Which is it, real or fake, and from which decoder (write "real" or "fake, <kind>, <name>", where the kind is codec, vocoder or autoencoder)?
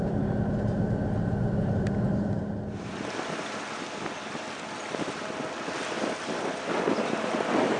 real